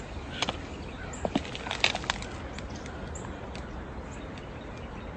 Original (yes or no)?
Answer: yes